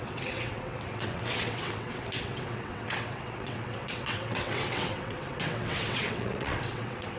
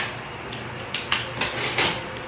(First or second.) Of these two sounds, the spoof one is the first